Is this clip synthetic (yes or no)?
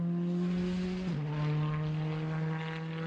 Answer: no